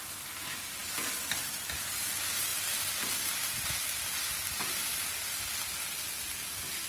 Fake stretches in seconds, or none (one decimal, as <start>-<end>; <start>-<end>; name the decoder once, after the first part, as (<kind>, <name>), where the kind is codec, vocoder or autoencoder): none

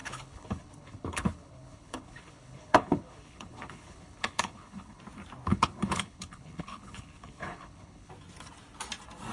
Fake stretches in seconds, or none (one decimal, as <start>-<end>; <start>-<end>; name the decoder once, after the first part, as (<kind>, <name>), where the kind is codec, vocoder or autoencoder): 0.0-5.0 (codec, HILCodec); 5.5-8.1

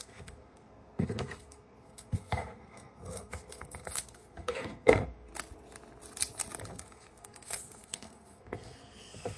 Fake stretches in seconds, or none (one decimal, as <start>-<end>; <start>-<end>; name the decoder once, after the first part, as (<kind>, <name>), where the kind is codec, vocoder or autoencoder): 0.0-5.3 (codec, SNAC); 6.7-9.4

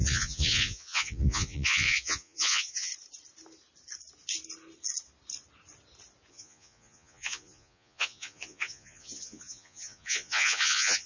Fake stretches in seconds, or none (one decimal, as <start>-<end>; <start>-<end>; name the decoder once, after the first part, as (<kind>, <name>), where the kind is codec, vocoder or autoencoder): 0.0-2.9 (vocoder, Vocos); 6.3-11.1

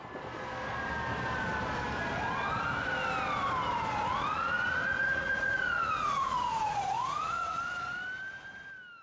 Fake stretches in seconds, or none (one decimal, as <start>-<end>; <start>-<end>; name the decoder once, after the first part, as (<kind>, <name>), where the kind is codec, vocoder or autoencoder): 4.1-7.6 (vocoder, Vocos)

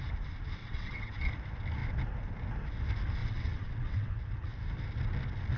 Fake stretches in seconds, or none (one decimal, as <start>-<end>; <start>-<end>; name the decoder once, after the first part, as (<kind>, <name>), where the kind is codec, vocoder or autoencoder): 0.6-1.3 (vocoder, WaveNeXt); 3.2-4.1

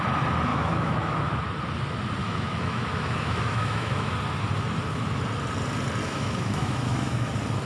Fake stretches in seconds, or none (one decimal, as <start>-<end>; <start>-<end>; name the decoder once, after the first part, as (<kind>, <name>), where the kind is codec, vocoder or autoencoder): 0.5-1.4 (autoencoder, DAC-VAE); 2.2-4.1; 6.0-7.3